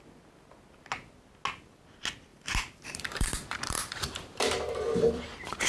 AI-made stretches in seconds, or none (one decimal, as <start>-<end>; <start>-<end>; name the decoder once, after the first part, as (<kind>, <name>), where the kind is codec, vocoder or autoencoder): 2.3-5.2 (vocoder, BigVGAN v2)